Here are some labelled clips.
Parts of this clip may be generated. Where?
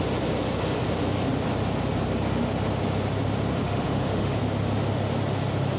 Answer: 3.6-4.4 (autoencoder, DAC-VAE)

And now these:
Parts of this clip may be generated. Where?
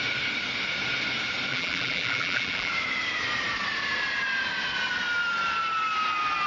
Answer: 1.5-2.7 (vocoder, BigVGAN v2)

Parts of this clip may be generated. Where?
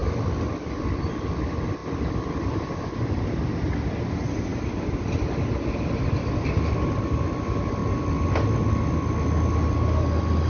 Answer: none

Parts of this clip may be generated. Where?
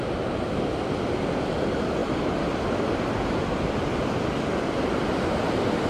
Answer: none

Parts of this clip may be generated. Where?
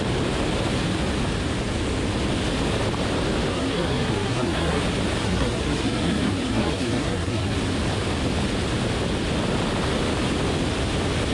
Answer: 3.5-4.8 (codec, SNAC); 5.2-7.6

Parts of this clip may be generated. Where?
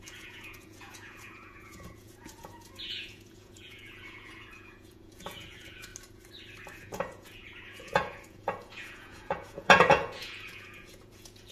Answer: 0.0-5.9 (vocoder, Vocos); 6.8-11.5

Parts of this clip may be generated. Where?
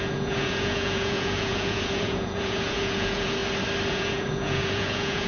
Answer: 0.0-3.4 (vocoder, Vocos); 3.9-5.3